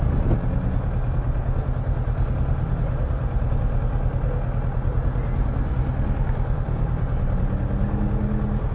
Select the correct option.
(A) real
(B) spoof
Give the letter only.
A